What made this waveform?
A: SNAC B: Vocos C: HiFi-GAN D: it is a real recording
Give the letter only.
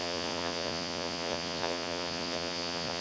B